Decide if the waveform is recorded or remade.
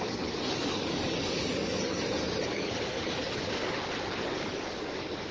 remade